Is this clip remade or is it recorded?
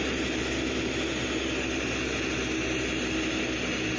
recorded